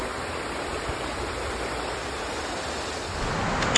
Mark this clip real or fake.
real